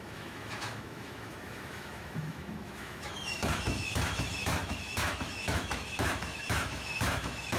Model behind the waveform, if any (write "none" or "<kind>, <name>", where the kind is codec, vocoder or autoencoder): autoencoder, DAC-VAE